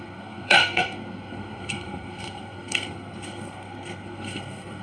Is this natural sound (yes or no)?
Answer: no